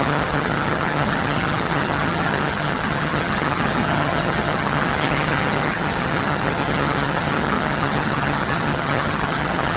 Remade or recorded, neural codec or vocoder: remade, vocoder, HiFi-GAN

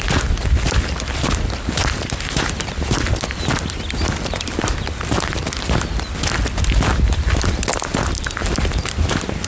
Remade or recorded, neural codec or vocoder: recorded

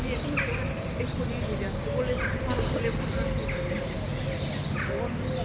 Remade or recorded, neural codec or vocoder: recorded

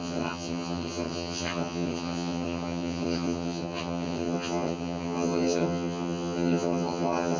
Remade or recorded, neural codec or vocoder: remade, vocoder, HiFi-GAN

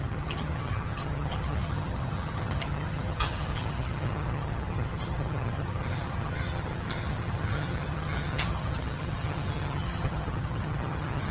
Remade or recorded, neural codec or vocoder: remade, vocoder, HiFi-GAN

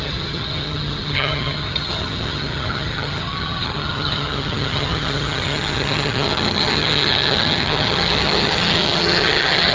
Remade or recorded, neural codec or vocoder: remade, vocoder, HiFi-GAN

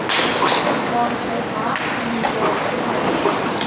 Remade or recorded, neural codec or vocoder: recorded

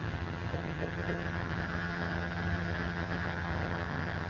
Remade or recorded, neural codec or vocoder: remade, vocoder, HiFi-GAN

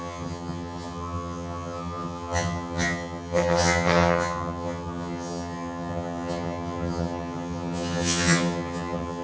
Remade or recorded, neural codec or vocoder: remade, vocoder, HiFi-GAN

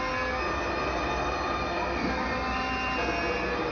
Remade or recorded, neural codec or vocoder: recorded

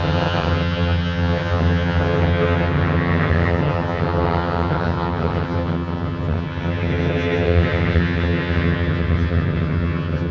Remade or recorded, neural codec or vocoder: remade, vocoder, HiFi-GAN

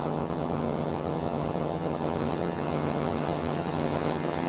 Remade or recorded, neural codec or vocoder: remade, vocoder, HiFi-GAN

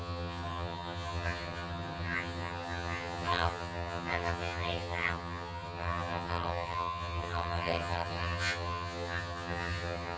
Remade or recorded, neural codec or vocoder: remade, vocoder, HiFi-GAN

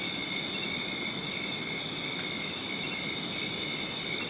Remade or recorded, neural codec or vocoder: recorded